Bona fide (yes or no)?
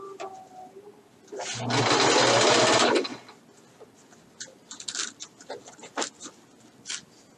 yes